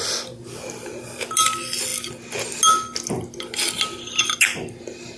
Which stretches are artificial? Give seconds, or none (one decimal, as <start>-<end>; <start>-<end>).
none

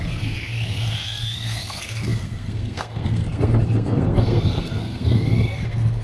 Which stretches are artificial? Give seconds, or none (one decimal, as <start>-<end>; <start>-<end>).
0.0-6.0

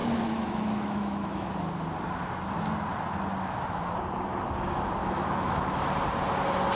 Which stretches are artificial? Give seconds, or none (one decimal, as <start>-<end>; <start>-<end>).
0.0-1.5; 5.0-5.8

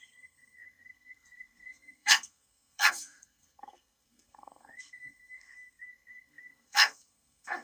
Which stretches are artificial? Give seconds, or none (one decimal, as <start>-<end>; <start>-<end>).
0.0-7.6